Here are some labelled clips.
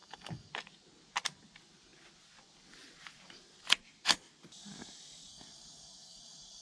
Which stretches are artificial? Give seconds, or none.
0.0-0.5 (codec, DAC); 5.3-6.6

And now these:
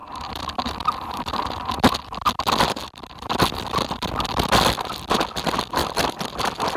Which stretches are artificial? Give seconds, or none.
0.0-4.1 (vocoder, BigVGAN v2); 5.8-6.8

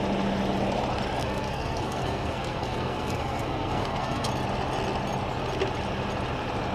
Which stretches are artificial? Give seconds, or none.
1.2-4.3 (codec, SNAC)

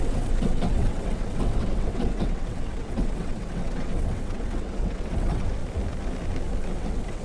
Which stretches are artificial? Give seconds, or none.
0.0-5.6 (vocoder, WaveNeXt); 6.8-7.2

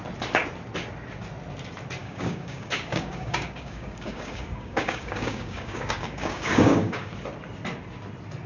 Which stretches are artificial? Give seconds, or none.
2.0-7.1 (codec, DAC)

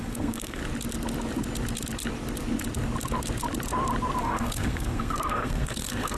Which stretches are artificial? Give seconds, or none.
0.0-0.6 (codec, SNAC); 4.2-6.2

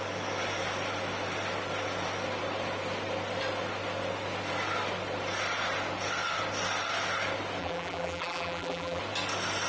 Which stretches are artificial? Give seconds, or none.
7.6-9.0 (vocoder, BigVGAN v2)